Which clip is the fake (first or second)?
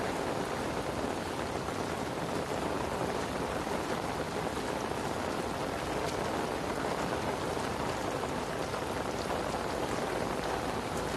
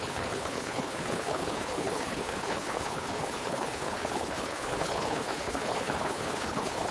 second